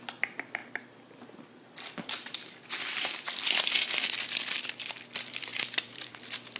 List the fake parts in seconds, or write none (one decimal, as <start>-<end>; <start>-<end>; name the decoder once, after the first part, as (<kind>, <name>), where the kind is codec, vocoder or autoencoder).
5.5-6.1 (vocoder, BigVGAN v2)